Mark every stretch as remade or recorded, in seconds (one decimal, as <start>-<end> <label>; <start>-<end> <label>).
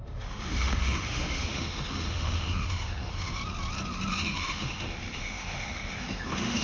0.0-3.4 remade; 3.4-4.1 recorded; 4.1-6.6 remade